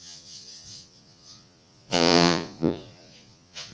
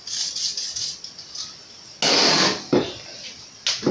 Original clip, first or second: second